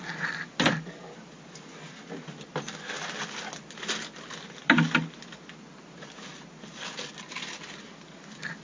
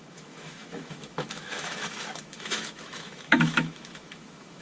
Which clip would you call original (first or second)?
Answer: first